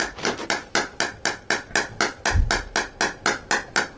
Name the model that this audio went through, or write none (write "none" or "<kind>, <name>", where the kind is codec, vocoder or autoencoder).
none